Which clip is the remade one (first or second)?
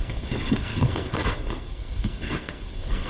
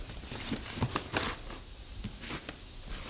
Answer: first